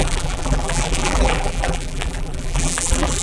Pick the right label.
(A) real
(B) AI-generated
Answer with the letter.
B